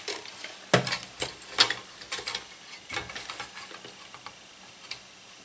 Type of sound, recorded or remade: recorded